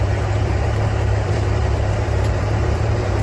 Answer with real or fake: fake